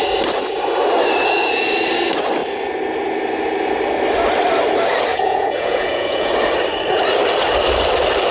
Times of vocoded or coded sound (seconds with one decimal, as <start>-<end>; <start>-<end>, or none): 5.1-6.3